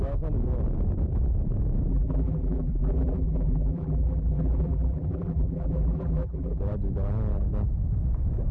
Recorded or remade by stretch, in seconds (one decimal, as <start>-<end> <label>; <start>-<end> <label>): 0.0-1.9 recorded; 1.9-6.6 remade; 6.6-8.5 recorded